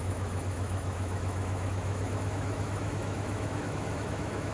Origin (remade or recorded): remade